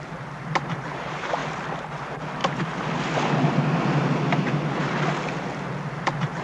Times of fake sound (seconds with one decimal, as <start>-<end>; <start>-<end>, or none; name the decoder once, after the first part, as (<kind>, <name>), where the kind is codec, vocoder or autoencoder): 0.0-1.4 (vocoder, BigVGAN v2); 2.0-2.4